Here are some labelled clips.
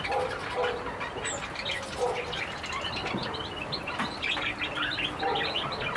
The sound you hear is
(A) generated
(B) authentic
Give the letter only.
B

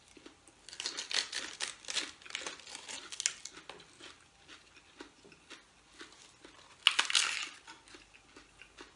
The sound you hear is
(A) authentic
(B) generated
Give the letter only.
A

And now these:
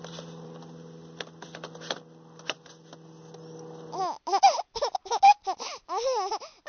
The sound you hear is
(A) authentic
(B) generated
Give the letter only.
A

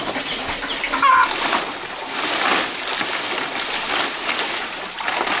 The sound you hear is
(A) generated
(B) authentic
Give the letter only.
B